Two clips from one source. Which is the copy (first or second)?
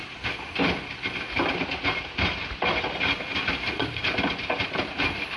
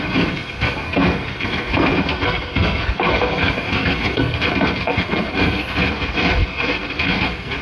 second